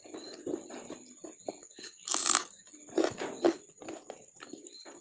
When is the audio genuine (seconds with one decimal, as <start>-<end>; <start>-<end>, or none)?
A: 0.0-1.6; 2.6-5.0